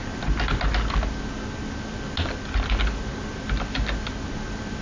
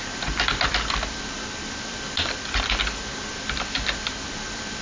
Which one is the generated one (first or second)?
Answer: second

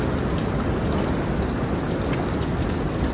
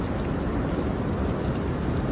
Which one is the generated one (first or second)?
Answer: first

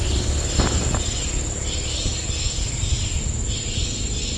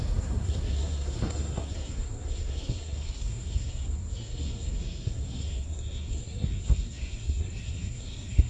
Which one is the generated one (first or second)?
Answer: second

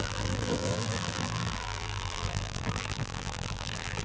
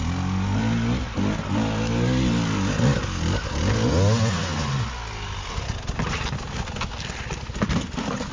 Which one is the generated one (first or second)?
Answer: first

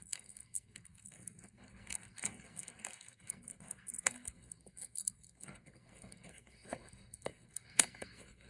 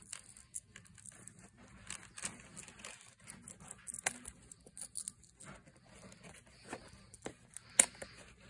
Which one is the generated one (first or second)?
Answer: first